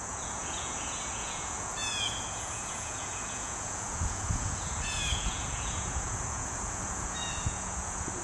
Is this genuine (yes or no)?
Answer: no